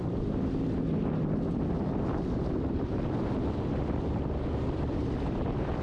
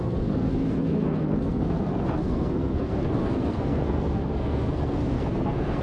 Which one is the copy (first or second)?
second